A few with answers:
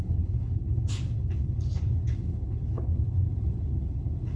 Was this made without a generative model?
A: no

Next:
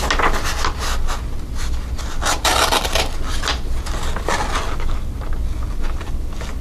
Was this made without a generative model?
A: yes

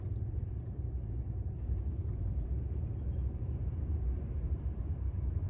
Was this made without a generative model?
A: no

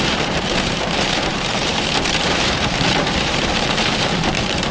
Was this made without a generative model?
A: no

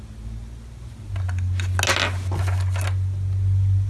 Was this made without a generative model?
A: yes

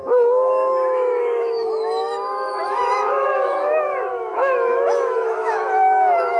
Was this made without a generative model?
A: no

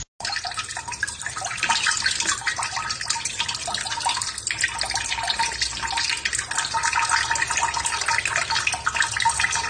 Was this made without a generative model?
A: yes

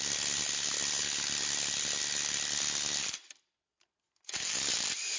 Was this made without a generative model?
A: yes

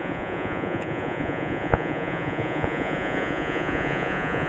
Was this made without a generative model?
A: no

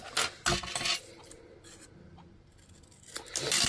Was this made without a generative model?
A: yes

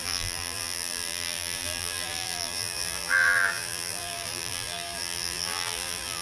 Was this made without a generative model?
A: no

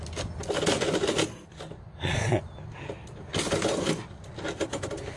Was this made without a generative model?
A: yes